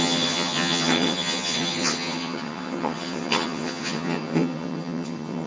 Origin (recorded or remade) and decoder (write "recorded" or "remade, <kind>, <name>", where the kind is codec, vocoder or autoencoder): remade, vocoder, HiFi-GAN